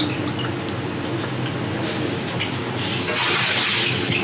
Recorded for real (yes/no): yes